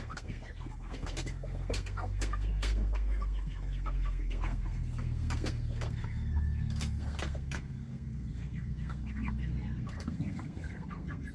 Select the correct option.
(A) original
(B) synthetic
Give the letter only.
B